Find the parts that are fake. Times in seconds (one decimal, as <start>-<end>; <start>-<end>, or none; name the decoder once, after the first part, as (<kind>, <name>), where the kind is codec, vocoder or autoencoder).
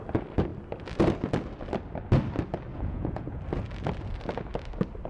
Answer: 2.7-3.4 (vocoder, Vocos)